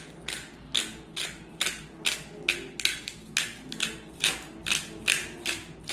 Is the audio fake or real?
real